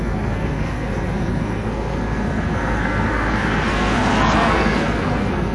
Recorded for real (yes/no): no